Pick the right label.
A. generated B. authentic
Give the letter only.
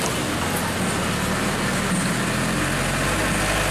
B